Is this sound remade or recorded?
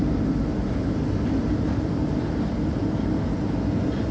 recorded